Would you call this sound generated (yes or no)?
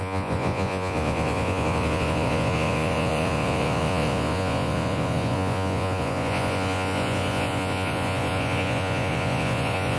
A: yes